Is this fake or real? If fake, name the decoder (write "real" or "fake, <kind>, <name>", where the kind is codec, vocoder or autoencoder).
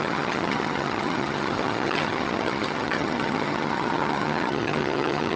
fake, vocoder, HiFi-GAN